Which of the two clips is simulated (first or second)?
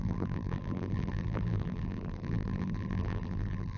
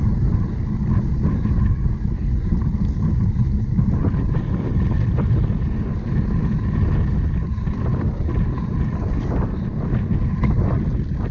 first